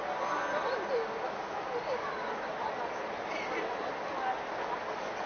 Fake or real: real